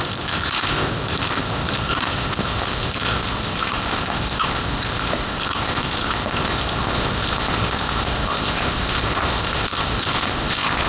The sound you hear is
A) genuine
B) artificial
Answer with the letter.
B